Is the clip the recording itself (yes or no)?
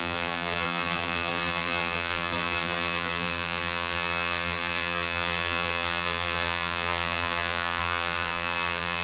no